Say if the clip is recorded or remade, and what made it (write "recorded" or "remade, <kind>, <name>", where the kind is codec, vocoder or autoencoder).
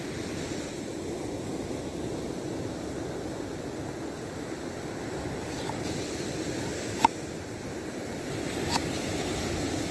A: recorded